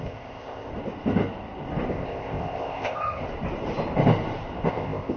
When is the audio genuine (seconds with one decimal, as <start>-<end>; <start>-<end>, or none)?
0.7-1.9; 3.2-4.7